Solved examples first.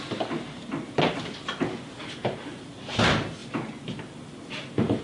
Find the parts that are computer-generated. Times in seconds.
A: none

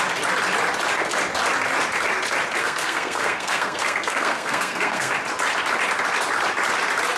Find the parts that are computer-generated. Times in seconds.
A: 2.6-5.1 (codec, SNAC)

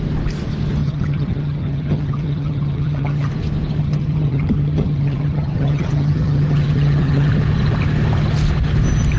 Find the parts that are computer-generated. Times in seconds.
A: 0.8-3.3 (vocoder, HiFi-GAN); 3.8-7.3

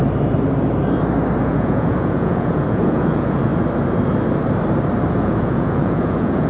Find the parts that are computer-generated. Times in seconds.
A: 1.4-3.5 (vocoder, Vocos); 5.1-6.5

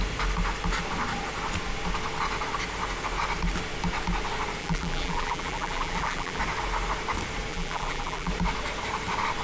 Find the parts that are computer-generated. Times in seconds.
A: 4.6-6.4 (vocoder, BigVGAN v2); 7.5-8.3